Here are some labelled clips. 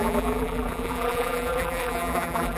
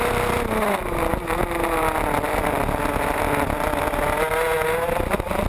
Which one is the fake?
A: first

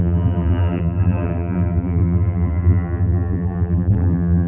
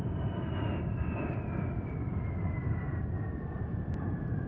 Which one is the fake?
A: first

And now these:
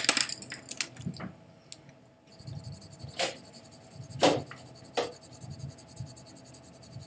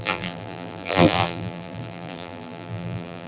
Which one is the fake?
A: second